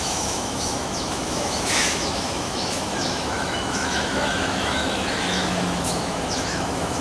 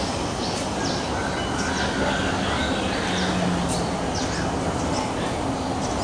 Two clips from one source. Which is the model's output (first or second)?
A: first